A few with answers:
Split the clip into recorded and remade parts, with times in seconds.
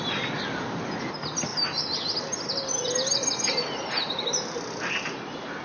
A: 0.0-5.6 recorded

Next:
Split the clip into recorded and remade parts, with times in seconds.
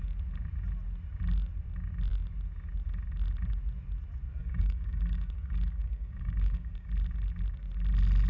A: 0.0-4.4 recorded; 4.4-6.9 remade; 6.9-8.3 recorded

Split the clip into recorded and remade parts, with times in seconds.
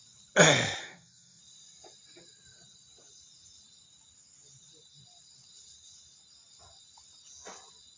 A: 0.0-0.8 recorded; 0.8-1.4 remade; 1.4-8.0 recorded